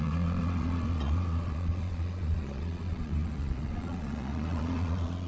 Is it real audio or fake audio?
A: fake